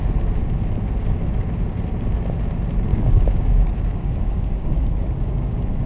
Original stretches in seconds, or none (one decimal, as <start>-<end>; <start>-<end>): 0.0-2.9